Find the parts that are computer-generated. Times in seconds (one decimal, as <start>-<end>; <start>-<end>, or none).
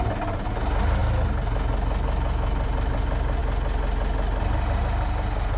none